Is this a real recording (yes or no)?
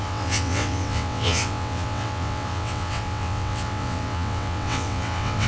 no